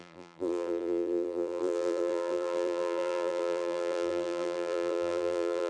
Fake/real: fake